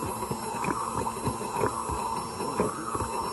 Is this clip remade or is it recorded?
recorded